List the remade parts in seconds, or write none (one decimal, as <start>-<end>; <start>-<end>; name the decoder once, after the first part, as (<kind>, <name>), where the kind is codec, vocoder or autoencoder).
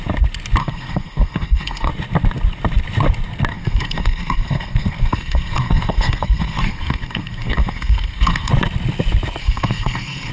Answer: 0.6-1.9 (codec, SNAC); 3.5-8.5; 9.4-10.3